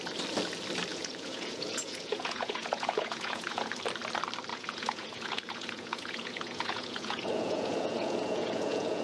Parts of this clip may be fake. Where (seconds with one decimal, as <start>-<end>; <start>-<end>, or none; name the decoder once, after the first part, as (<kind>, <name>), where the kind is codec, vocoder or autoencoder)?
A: 0.9-3.8 (vocoder, Vocos); 4.5-9.0